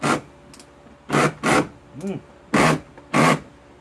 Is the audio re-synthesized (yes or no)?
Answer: no